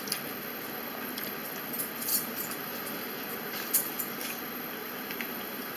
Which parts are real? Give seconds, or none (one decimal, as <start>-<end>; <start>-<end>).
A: 0.0-2.1; 4.0-4.8